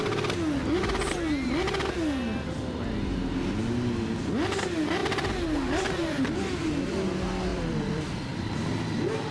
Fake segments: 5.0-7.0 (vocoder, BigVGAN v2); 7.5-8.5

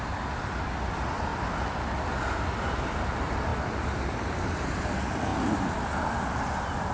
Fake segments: 3.5-4.2 (vocoder, BigVGAN v2)

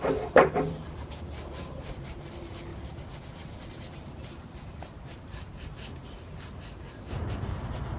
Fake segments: 0.0-2.7 (vocoder, BigVGAN v2); 3.7-8.0

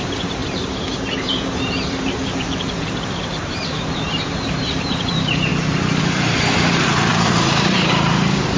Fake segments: 0.0-8.6 (vocoder, BigVGAN v2)

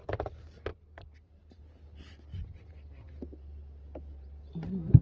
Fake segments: 0.7-1.6 (vocoder, BigVGAN v2); 2.3-3.1

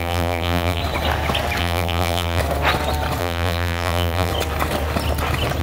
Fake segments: 0.0-0.8 (vocoder, BigVGAN v2); 1.6-2.4; 3.2-4.3

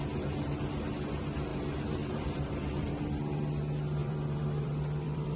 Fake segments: 1.5-3.0 (vocoder, BigVGAN v2); 4.0-5.4

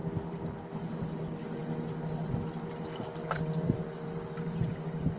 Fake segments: 0.0-1.2 (vocoder, BigVGAN v2); 1.6-4.7